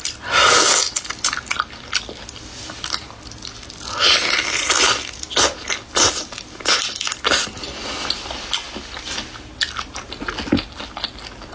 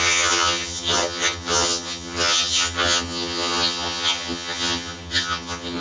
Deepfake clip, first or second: second